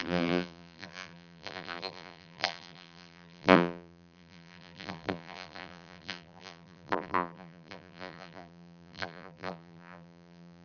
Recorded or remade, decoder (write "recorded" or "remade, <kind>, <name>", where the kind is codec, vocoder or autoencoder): remade, vocoder, BigVGAN v2